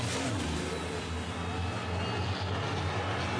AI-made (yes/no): no